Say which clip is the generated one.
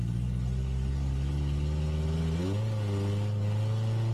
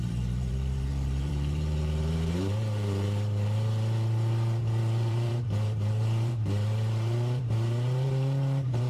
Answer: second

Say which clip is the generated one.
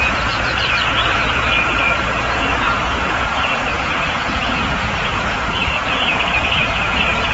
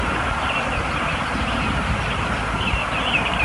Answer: first